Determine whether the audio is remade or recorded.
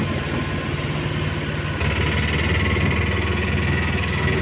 recorded